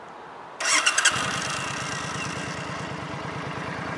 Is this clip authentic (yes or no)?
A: yes